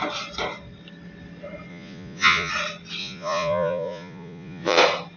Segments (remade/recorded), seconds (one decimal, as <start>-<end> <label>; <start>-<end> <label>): 0.0-1.7 recorded; 1.7-2.5 remade; 2.5-3.0 recorded; 3.0-4.8 remade; 4.8-5.2 recorded